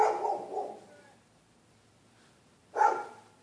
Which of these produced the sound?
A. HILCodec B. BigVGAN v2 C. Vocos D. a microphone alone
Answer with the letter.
D